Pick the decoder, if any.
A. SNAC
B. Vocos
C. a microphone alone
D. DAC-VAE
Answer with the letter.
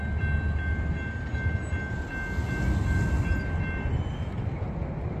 C